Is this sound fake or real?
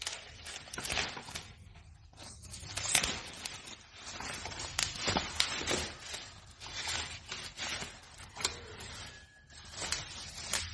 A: real